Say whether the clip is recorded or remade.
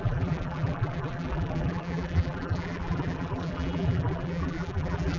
remade